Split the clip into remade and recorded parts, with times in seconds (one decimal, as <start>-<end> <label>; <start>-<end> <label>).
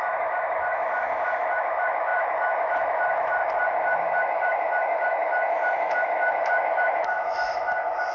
0.0-8.1 remade